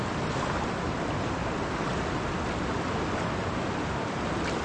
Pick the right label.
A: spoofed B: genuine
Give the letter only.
B